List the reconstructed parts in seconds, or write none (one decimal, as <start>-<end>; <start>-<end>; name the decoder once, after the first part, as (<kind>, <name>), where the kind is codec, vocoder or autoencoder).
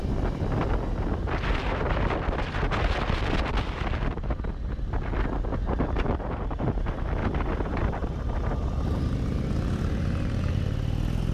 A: 7.2-7.8 (vocoder, BigVGAN v2)